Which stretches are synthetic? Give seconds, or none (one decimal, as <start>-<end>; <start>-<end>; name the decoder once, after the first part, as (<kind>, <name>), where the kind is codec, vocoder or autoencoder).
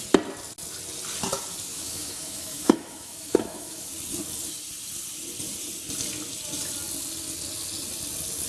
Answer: 1.7-3.9 (autoencoder, DAC-VAE)